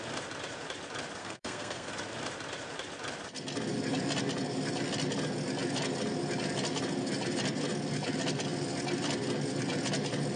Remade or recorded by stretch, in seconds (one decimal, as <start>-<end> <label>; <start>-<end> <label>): 0.0-1.2 recorded; 1.2-1.9 remade; 1.9-10.4 recorded